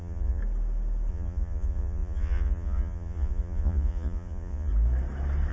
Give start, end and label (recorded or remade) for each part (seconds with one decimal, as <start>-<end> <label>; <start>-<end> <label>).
0.0-0.4 remade; 0.4-1.1 recorded; 1.1-4.7 remade; 4.7-5.5 recorded